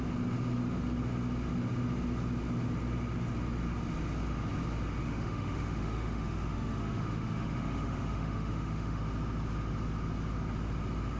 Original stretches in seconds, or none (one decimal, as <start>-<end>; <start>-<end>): 0.0-5.0; 9.0-11.2